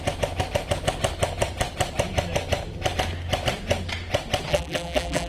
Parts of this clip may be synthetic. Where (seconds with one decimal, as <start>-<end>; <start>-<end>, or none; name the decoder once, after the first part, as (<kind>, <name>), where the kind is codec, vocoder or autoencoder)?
4.5-5.3 (vocoder, BigVGAN v2)